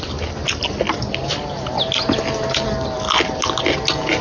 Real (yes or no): yes